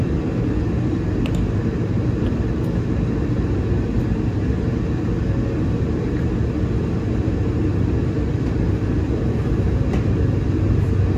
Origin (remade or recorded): recorded